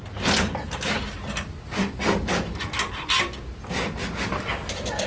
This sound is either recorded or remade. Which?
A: recorded